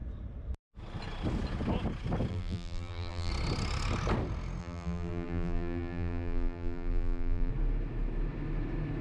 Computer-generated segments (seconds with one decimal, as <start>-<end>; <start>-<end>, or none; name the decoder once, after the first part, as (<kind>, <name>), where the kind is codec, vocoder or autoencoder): 2.3-3.3 (vocoder, BigVGAN v2); 4.6-7.5